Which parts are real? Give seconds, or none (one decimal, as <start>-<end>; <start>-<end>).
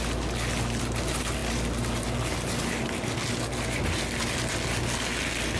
0.0-5.6